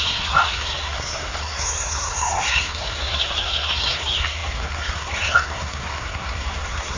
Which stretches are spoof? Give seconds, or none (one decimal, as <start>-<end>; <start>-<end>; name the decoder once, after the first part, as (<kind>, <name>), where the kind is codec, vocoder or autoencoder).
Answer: 0.0-7.0 (codec, SNAC)